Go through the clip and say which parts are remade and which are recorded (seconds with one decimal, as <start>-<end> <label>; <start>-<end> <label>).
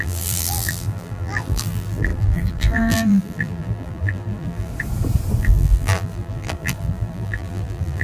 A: 0.0-4.7 remade; 4.7-5.4 recorded; 5.4-8.0 remade